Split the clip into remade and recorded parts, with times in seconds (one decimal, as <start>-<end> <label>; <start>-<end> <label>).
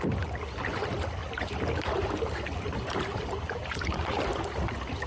0.0-1.2 recorded; 1.2-4.3 remade; 4.3-5.1 recorded